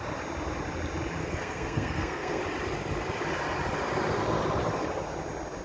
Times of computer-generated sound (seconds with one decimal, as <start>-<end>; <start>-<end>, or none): 1.2-2.4